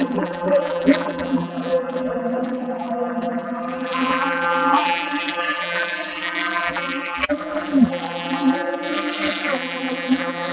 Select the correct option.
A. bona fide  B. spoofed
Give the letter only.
B